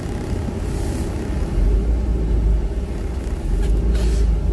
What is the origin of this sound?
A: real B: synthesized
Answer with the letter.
A